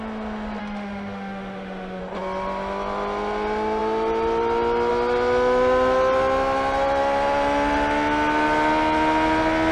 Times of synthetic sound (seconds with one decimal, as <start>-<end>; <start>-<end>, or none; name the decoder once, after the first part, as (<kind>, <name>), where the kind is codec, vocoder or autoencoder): 0.6-2.0 (autoencoder, DAC-VAE)